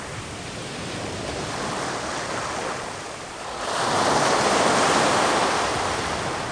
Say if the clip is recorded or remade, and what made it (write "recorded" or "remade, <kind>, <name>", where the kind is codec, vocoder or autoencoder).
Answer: recorded